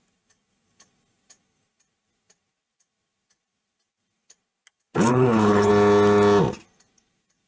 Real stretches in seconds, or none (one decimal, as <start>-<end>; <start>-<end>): 0.0-5.1; 5.7-7.5